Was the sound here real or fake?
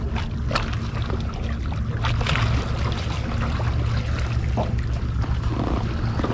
real